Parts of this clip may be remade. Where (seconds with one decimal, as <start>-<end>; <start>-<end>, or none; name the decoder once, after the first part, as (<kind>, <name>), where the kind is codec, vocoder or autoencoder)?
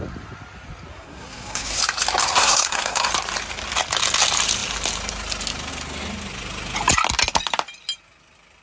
0.9-1.8 (codec, SNAC); 2.2-3.1